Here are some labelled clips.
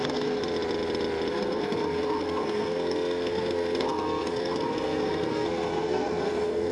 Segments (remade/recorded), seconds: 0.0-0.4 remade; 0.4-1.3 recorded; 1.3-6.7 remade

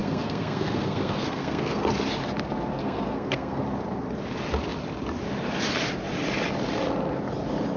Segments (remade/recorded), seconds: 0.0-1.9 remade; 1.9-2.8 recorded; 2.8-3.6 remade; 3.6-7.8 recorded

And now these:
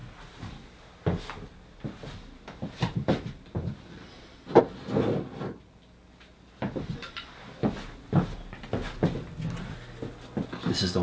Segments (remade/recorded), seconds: 0.0-11.0 recorded

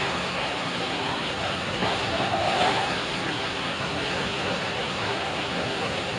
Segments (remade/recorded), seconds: 0.0-6.2 remade

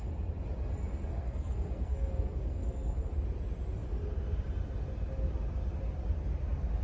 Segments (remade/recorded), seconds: 0.0-1.1 recorded; 1.1-3.1 remade; 3.1-6.8 recorded